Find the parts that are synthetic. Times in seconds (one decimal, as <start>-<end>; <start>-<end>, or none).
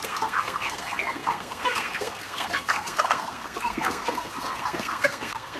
0.0-5.6